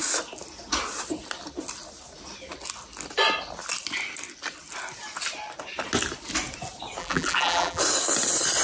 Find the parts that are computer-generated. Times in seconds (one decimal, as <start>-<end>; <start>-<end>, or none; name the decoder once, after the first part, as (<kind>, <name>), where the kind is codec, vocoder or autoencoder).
7.0-7.8 (vocoder, BigVGAN v2)